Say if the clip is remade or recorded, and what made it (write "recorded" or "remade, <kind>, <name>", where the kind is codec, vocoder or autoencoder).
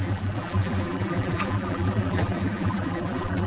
remade, vocoder, BigVGAN v2